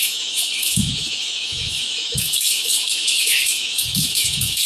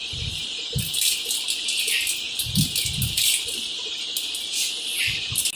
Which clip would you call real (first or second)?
second